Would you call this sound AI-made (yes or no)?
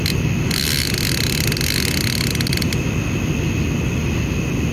no